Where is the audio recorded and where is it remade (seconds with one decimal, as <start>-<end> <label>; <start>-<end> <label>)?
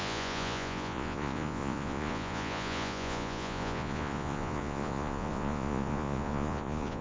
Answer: 0.0-7.0 remade